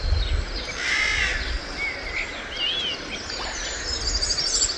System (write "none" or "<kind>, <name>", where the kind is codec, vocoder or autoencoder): none